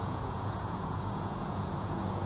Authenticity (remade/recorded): remade